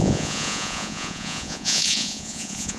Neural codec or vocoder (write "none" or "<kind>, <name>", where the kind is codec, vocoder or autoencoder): vocoder, Vocos